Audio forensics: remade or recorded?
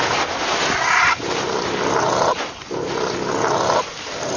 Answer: recorded